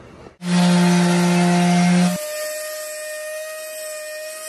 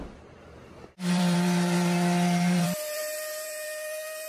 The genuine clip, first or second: first